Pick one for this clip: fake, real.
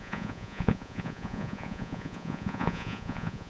fake